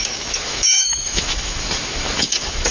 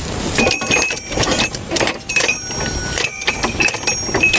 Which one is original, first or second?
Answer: second